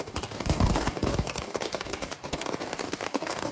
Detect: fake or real fake